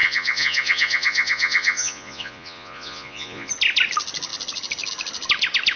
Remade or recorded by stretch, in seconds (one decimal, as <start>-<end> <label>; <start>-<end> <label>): 0.0-3.5 remade; 3.5-5.8 recorded